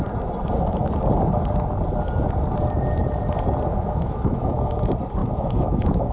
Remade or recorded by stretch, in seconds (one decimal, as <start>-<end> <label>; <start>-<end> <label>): 0.0-3.7 recorded; 3.7-4.8 remade; 4.8-5.2 recorded; 5.2-6.1 remade